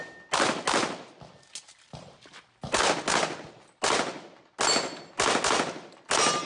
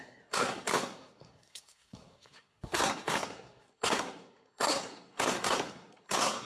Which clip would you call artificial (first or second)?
second